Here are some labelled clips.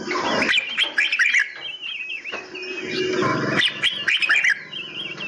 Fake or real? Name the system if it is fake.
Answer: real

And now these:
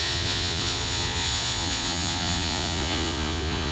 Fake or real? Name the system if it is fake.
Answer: fake, vocoder, Vocos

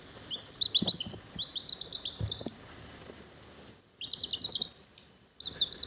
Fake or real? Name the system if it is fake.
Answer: real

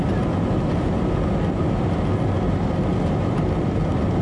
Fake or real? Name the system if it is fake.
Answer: real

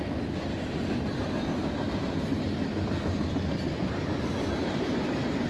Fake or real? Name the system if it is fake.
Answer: real